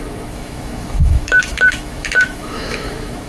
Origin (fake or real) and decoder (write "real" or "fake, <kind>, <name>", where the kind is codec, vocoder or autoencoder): fake, autoencoder, DAC-VAE